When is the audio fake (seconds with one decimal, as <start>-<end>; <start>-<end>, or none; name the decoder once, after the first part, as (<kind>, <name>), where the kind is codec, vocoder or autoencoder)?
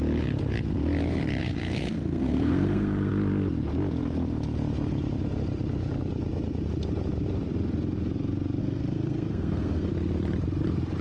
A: 1.4-3.1 (codec, SNAC); 8.6-9.9